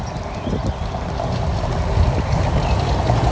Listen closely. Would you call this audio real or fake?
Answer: real